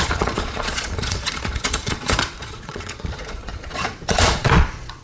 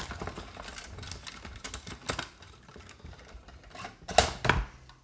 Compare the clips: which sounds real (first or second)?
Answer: second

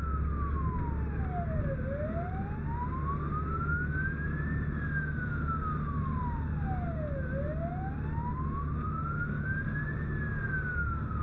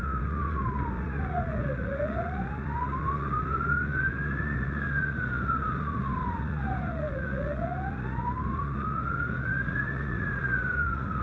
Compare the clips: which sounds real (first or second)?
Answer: first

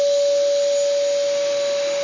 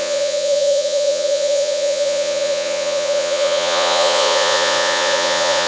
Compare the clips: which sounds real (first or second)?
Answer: first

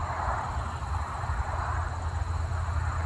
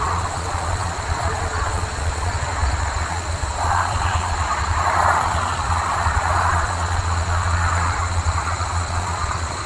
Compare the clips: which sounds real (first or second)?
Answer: first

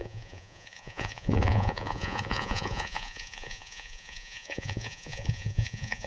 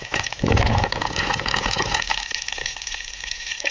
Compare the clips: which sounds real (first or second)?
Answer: second